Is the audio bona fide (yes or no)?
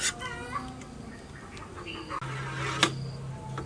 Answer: yes